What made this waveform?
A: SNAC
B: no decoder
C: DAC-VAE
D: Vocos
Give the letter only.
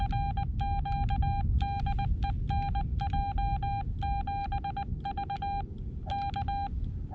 B